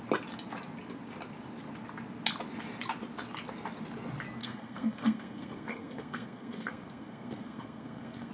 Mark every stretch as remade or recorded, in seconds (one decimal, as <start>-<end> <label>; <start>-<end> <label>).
0.0-4.4 recorded; 4.4-8.3 remade

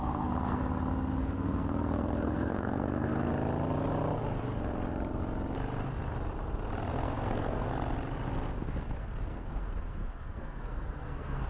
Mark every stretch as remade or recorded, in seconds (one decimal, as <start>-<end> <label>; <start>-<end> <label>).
0.0-0.6 remade; 0.6-1.2 recorded; 1.2-3.3 remade; 3.3-6.9 recorded; 6.9-7.7 remade; 7.7-8.7 recorded; 8.7-11.5 remade

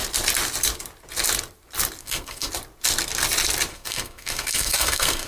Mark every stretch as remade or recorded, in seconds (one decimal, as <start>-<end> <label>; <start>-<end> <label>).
0.0-2.0 recorded; 2.0-2.5 remade; 2.5-3.7 recorded; 3.7-5.3 remade

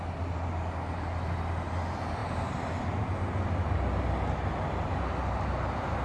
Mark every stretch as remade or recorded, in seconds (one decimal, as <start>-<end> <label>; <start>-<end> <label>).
0.0-6.0 recorded

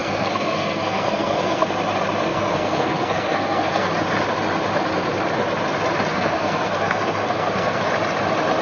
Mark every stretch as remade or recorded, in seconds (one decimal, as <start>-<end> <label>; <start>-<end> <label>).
0.0-1.7 remade; 1.7-2.3 recorded; 2.3-3.9 remade; 3.9-6.1 recorded; 6.1-7.8 remade; 7.8-8.6 recorded

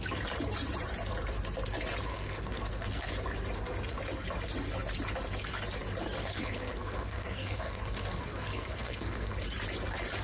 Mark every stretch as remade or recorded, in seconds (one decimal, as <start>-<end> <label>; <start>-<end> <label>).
0.0-2.1 recorded; 2.1-3.1 remade; 3.1-6.2 recorded; 6.2-9.4 remade; 9.4-10.2 recorded